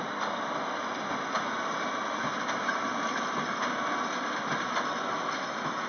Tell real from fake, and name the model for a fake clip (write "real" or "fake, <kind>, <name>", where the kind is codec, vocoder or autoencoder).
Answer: real